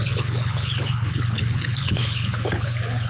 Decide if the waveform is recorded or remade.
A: remade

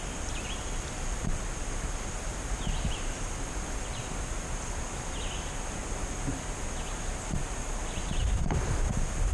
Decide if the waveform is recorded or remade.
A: recorded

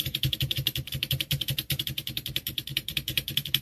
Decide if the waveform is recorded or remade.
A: remade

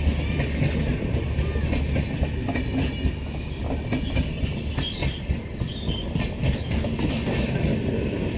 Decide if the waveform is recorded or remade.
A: recorded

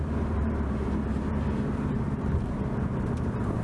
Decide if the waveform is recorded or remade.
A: remade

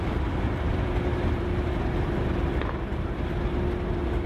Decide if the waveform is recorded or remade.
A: recorded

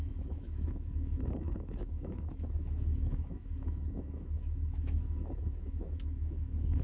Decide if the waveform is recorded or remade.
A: remade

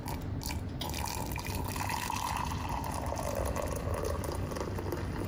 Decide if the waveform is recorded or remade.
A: recorded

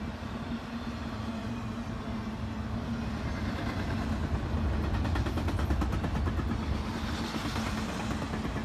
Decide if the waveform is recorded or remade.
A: recorded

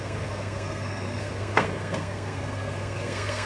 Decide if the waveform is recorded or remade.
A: remade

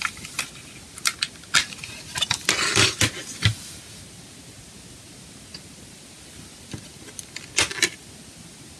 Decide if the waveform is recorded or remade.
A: recorded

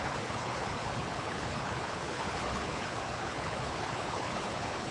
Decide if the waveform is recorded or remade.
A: remade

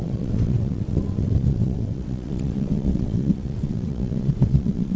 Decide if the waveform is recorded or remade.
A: remade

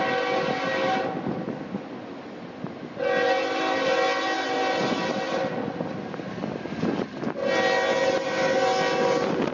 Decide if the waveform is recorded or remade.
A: recorded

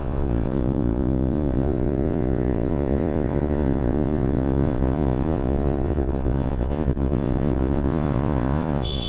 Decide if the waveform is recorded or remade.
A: remade